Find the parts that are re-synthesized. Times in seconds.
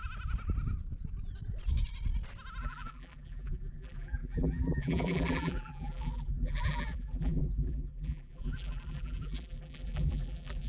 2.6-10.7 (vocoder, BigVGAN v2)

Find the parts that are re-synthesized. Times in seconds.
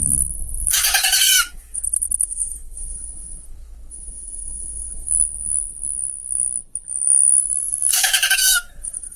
0.0-5.1 (autoencoder, DAC-VAE); 7.4-9.2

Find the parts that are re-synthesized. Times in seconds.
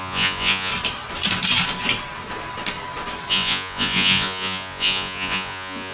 0.0-0.7 (vocoder, Vocos); 3.3-5.9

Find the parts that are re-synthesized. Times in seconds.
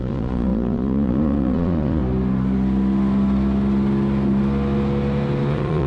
0.0-2.0 (vocoder, Vocos); 5.5-5.9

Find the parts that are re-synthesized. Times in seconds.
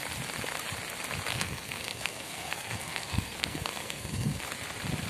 1.3-4.4 (codec, SNAC)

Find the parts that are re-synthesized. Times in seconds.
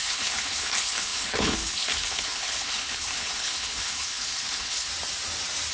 0.0-4.9 (codec, HILCodec)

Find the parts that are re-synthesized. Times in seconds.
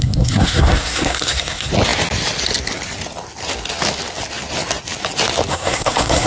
0.0-1.7 (codec, SNAC); 5.5-6.3